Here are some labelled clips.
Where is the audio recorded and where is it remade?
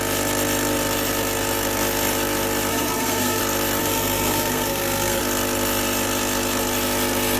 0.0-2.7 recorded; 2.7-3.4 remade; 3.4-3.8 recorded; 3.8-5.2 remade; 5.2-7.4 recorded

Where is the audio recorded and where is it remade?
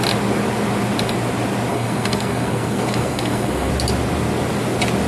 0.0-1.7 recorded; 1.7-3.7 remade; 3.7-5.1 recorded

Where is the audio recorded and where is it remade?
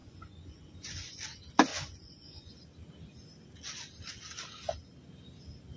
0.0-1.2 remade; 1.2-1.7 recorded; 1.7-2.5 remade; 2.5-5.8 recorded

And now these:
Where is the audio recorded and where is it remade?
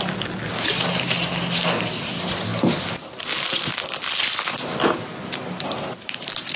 0.0-6.6 recorded